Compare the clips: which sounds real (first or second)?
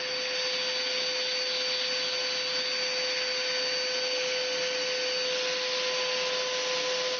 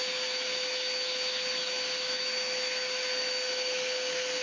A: first